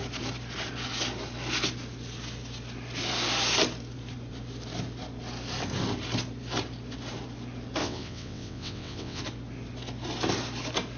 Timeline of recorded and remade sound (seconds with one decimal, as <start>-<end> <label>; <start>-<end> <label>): 0.0-7.8 recorded; 7.8-9.2 remade; 9.2-11.0 recorded